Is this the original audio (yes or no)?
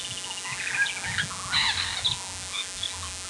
yes